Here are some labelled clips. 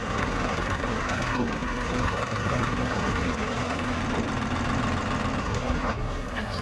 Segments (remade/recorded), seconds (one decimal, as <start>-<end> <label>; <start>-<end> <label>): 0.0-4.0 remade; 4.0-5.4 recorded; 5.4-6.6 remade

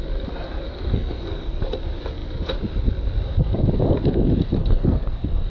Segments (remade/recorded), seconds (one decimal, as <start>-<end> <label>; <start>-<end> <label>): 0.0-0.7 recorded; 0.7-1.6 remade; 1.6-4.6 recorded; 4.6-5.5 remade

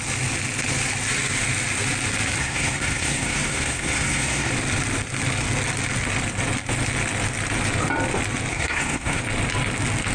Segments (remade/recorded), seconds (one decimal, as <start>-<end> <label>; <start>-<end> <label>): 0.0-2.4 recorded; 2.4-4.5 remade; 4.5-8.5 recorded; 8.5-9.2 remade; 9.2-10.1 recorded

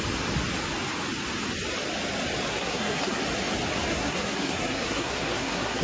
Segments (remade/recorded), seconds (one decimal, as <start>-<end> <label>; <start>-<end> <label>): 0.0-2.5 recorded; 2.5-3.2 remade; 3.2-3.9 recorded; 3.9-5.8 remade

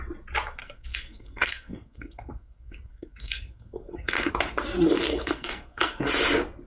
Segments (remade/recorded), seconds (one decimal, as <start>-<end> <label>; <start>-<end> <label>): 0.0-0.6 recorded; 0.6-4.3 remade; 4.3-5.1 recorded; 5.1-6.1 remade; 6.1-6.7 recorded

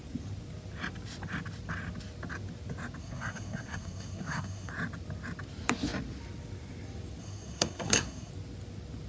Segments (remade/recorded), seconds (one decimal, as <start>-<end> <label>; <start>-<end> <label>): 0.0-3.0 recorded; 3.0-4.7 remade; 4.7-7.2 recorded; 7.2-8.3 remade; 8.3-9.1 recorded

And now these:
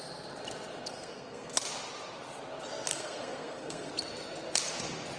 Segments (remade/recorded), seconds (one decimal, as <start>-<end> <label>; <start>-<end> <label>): 0.0-0.9 recorded; 0.9-1.5 remade; 1.5-2.9 recorded; 2.9-3.9 remade; 3.9-5.2 recorded

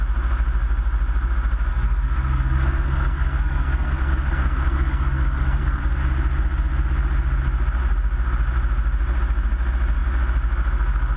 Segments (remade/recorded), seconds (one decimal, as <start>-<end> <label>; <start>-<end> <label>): 0.0-1.7 recorded; 1.7-5.8 remade; 5.8-11.2 recorded